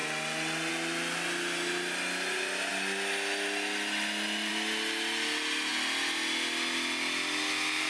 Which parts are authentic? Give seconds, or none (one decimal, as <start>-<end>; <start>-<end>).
0.0-7.9